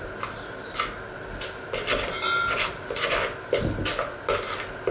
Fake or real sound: real